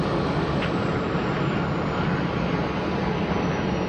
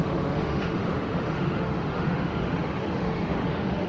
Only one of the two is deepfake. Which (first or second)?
second